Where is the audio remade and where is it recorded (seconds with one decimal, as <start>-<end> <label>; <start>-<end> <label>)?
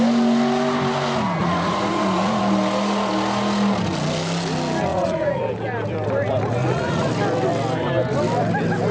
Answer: 0.0-1.4 recorded; 1.4-2.4 remade; 2.4-4.9 recorded; 4.9-5.4 remade; 5.4-6.6 recorded; 6.6-7.1 remade; 7.1-8.9 recorded